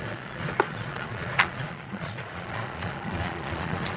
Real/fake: fake